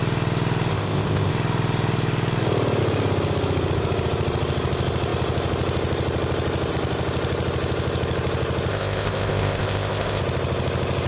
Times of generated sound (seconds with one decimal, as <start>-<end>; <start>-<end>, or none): 0.7-1.3; 8.7-10.2